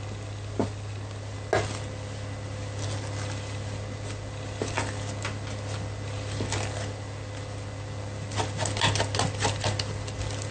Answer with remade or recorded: recorded